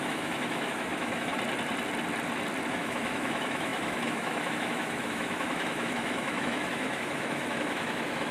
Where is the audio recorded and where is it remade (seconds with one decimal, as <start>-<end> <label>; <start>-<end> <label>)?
0.0-1.3 remade; 1.3-2.7 recorded; 2.7-8.3 remade